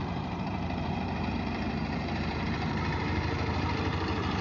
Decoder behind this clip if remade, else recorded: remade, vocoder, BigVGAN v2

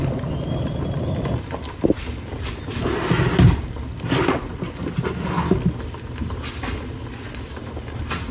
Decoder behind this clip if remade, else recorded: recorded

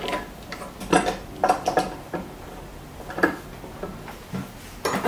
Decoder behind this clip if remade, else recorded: recorded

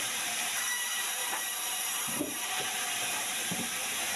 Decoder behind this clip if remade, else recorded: remade, vocoder, BigVGAN v2